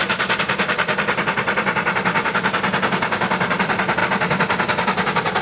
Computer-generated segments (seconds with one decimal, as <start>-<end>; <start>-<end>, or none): none